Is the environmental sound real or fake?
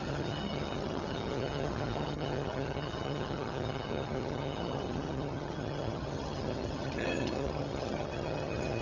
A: fake